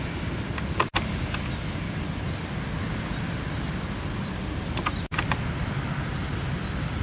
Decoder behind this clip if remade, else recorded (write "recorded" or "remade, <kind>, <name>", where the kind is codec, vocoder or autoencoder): recorded